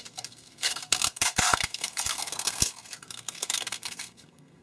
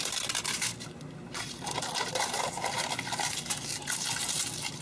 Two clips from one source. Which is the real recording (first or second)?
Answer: second